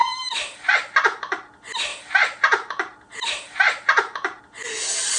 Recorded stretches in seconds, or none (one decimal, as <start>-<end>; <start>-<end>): 0.7-1.9; 4.4-5.2